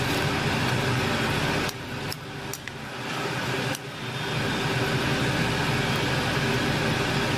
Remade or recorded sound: recorded